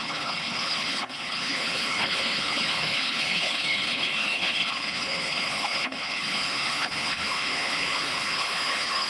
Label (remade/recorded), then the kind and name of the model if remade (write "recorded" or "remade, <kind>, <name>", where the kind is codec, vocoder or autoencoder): remade, codec, HILCodec